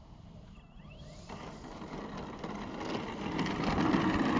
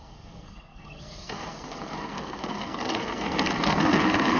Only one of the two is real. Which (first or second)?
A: first